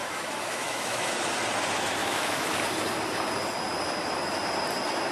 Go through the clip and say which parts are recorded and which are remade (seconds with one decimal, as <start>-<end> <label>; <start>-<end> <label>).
0.0-1.1 remade; 1.1-2.0 recorded; 2.0-2.6 remade; 2.6-5.1 recorded